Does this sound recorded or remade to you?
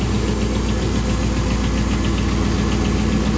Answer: recorded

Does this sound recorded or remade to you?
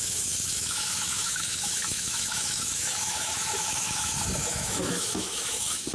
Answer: remade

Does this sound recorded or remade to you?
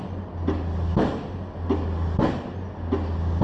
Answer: recorded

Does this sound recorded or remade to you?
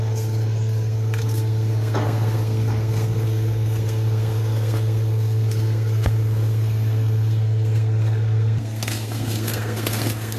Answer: remade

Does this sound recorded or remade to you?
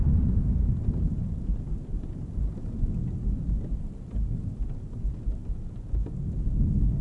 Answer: recorded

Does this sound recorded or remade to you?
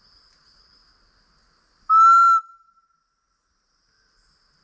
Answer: recorded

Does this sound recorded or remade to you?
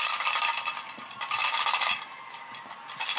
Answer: recorded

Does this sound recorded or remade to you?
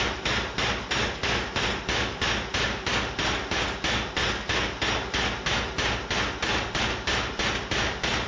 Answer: recorded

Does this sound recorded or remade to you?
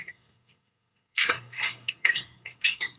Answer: remade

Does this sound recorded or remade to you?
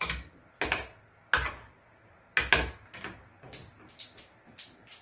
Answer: recorded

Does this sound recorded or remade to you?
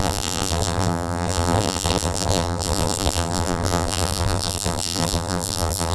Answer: remade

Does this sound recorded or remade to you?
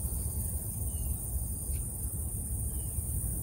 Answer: recorded